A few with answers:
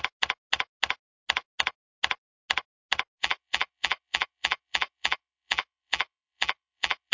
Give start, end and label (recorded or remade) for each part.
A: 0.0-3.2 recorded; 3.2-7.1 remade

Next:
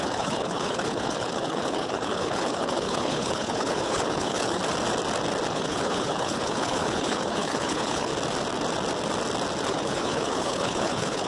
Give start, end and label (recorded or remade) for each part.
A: 0.0-4.6 remade; 4.6-5.5 recorded; 5.5-8.1 remade; 8.1-9.7 recorded; 9.7-11.3 remade

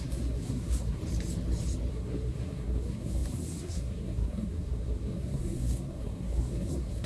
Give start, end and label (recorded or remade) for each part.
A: 0.0-1.0 remade; 1.0-1.9 recorded; 1.9-7.1 remade